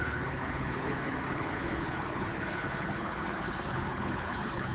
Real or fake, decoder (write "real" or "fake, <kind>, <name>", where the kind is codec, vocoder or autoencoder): fake, codec, HILCodec